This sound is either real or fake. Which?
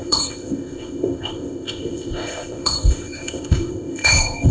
fake